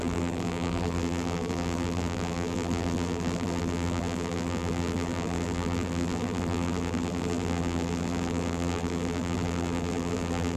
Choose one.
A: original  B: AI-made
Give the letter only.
B